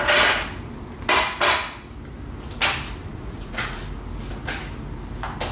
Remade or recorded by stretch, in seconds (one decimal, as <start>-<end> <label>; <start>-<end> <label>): 0.0-3.1 recorded; 3.1-3.8 remade; 3.8-5.5 recorded